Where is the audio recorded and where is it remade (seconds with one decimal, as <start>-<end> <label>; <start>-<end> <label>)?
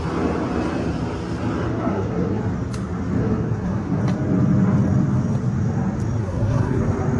0.0-1.7 recorded; 1.7-2.4 remade; 2.4-3.2 recorded; 3.2-4.0 remade; 4.0-6.2 recorded; 6.2-6.8 remade; 6.8-7.2 recorded